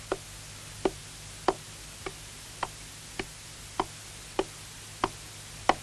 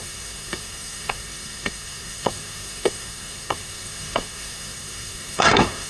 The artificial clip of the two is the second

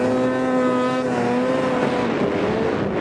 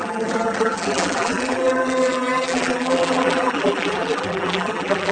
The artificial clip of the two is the second